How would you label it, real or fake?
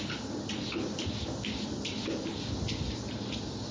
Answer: real